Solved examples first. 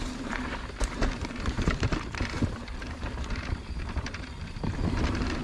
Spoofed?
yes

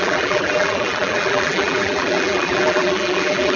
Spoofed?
yes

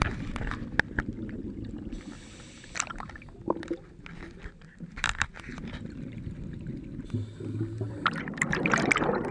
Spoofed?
no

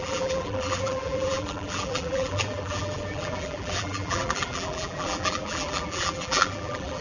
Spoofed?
yes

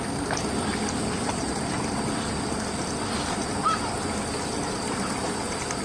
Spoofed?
no